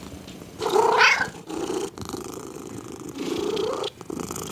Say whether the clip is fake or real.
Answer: real